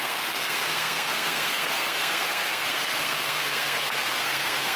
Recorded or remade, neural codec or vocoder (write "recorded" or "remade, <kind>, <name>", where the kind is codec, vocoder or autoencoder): remade, codec, SNAC